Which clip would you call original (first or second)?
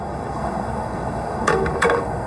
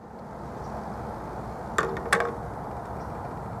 second